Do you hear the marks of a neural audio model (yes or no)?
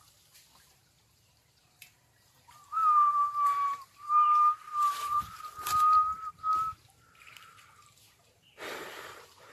yes